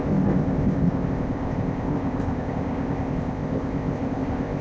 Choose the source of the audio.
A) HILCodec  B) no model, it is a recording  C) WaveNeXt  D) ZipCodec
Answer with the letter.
D